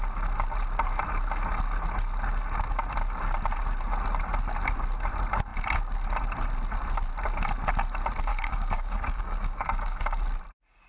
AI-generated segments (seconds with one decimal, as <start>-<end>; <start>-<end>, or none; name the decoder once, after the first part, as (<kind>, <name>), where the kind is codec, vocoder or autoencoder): 8.3-10.2 (codec, DAC)